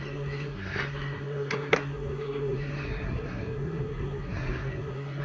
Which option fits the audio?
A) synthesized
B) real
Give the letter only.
A